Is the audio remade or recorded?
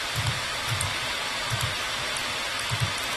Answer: recorded